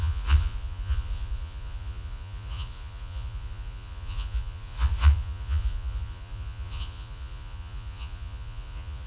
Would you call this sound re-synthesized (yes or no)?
yes